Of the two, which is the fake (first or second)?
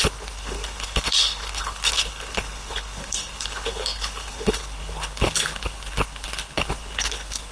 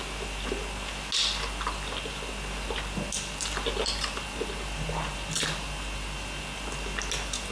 first